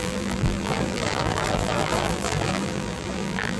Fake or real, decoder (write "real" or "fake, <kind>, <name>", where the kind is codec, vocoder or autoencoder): fake, vocoder, BigVGAN v2